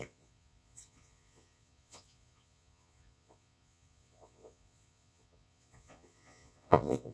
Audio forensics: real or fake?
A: fake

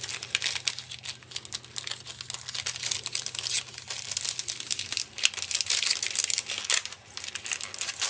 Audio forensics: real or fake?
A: real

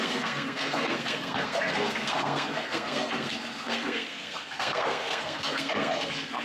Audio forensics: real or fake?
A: fake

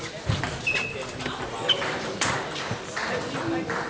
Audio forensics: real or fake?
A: real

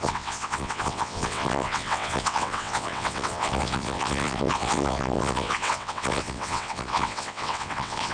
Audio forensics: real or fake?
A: fake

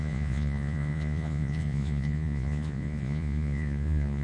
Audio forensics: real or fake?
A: fake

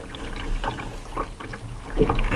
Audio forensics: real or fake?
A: real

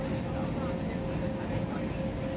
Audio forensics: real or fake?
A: real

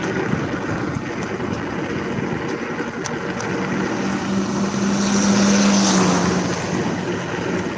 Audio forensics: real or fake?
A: real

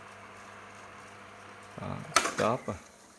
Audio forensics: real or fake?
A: real